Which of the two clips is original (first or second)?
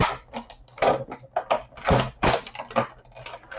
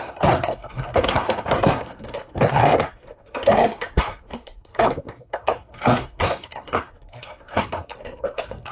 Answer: first